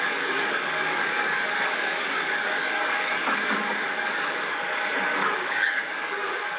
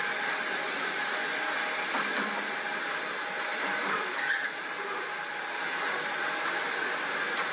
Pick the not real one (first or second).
first